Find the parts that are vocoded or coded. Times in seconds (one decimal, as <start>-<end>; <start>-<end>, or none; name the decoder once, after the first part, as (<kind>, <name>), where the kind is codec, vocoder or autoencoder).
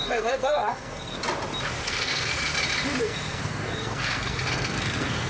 0.0-1.2 (codec, SNAC); 1.8-2.5; 3.0-5.3